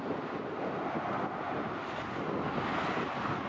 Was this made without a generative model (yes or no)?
yes